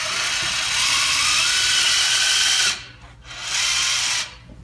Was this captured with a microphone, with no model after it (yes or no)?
yes